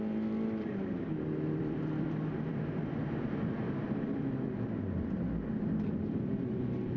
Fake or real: fake